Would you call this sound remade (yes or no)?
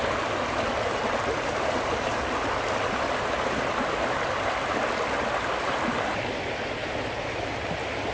no